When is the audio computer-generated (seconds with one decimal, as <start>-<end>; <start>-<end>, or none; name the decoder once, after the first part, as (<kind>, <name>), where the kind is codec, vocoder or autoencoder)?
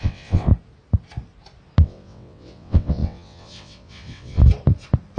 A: 0.0-0.5 (vocoder, WaveNeXt); 1.8-4.4